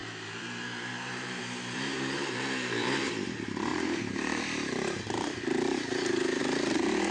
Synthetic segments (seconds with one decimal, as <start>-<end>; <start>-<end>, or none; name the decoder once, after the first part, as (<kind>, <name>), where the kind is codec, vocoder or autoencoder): 0.0-3.1 (vocoder, BigVGAN v2); 3.7-6.4